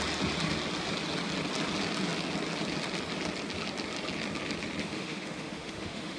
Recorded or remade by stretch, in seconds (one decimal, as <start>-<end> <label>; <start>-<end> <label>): 0.0-4.8 recorded; 4.8-6.2 remade